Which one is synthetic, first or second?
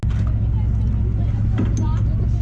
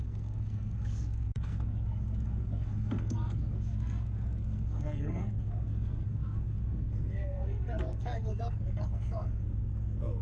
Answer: second